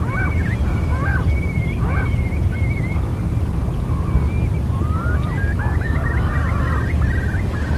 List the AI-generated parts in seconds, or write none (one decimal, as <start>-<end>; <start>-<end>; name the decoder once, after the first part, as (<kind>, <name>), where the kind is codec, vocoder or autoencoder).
0.4-1.4 (vocoder, BigVGAN v2)

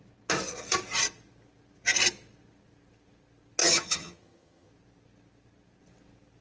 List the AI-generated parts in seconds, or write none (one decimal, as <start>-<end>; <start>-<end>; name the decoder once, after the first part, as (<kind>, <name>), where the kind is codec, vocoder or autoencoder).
3.6-4.7 (vocoder, HiFi-GAN)

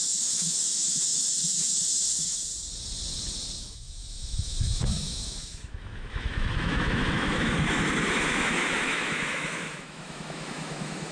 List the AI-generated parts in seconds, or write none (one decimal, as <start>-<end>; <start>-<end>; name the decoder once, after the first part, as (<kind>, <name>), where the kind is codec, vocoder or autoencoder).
0.0-2.5 (autoencoder, DAC-VAE); 3.6-11.1

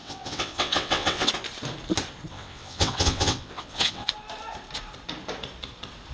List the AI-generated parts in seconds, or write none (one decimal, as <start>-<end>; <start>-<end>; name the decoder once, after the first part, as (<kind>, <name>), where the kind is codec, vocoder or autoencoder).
0.0-1.3 (vocoder, WaveNeXt); 2.3-4.1

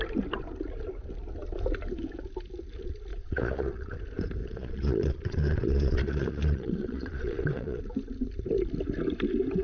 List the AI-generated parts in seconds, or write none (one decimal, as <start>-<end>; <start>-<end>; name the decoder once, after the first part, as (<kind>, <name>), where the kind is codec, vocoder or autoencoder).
3.1-4.0 (vocoder, Vocos); 4.4-7.8